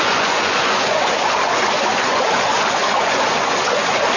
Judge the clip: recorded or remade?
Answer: remade